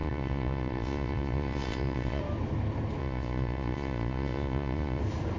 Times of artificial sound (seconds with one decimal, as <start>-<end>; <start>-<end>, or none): 0.0-2.2; 3.0-5.0